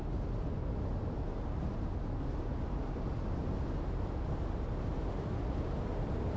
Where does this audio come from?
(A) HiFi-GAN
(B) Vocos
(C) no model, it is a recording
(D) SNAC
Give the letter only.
C